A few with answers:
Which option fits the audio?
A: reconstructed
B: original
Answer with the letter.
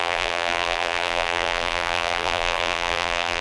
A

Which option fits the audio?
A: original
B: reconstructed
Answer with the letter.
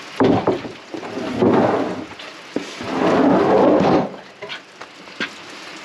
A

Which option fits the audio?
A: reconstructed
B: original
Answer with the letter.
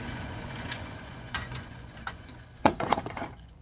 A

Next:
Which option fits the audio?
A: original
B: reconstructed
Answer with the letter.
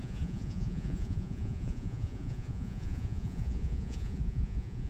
B